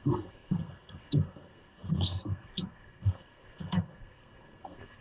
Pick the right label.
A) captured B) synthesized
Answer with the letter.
B